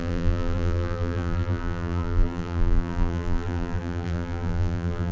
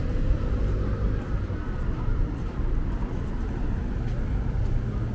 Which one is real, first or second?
second